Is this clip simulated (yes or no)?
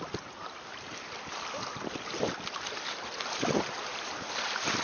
no